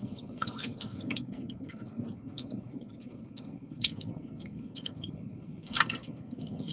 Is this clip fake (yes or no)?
yes